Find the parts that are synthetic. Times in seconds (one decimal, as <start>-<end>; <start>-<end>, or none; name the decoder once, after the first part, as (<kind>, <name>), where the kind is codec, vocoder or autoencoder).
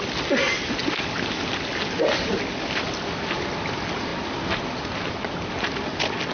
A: 4.1-4.7 (vocoder, BigVGAN v2)